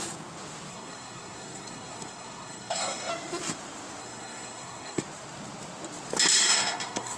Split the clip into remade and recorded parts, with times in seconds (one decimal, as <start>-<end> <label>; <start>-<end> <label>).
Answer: 0.0-0.7 recorded; 0.7-3.1 remade; 3.1-4.0 recorded; 4.0-5.0 remade; 5.0-6.4 recorded; 6.4-7.2 remade